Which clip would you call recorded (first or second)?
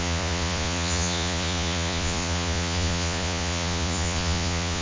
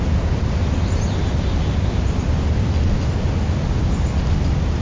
second